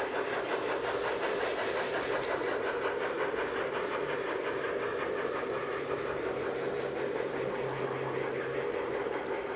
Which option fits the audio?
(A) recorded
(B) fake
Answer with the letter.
A